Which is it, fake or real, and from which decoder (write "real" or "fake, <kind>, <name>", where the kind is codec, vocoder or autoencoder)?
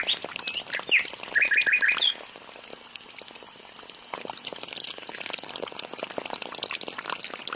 real